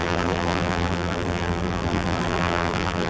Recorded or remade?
remade